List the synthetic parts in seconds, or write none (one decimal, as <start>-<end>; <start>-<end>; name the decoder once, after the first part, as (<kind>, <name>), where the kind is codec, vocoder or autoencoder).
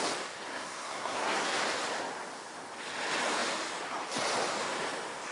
0.5-1.6 (codec, SNAC)